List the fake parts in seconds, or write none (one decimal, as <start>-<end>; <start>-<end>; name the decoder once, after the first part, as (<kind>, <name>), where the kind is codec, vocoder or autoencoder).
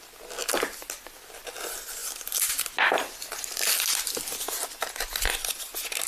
none